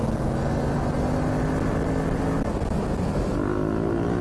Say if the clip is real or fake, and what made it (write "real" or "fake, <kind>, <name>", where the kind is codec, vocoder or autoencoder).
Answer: real